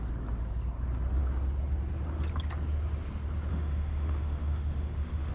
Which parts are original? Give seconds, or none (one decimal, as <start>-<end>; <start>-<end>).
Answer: 0.0-3.5